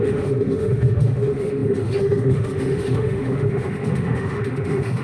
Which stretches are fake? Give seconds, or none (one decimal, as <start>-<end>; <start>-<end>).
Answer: 0.0-5.0